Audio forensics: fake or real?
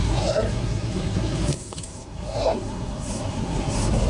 fake